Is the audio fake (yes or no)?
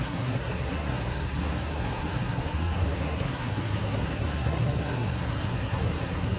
yes